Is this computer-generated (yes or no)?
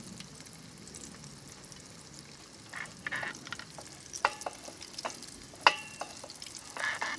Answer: no